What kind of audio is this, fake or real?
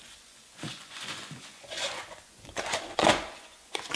fake